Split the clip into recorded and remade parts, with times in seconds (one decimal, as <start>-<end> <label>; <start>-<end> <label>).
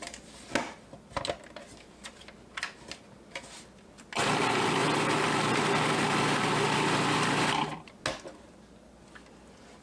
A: 0.0-9.8 recorded